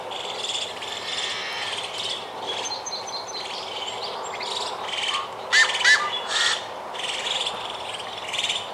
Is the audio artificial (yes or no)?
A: no